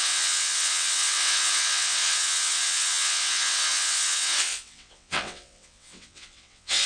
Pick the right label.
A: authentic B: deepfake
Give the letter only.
B